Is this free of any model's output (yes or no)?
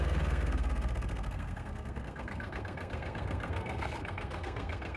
no